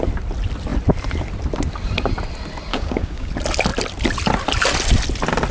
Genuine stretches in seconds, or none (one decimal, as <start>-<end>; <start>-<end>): 0.0-2.7; 3.3-5.5